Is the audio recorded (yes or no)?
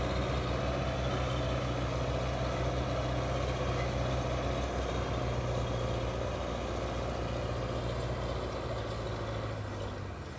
yes